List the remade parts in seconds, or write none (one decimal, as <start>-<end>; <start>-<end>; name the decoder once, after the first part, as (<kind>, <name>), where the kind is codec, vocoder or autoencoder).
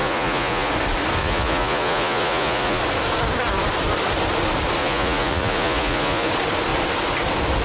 0.0-0.7 (vocoder, Vocos); 1.2-2.8; 4.8-6.3